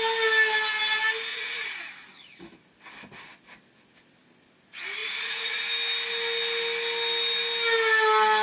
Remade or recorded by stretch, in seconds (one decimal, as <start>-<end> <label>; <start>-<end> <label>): 0.0-1.3 recorded; 1.3-1.9 remade; 1.9-5.0 recorded; 5.0-5.6 remade; 5.6-8.4 recorded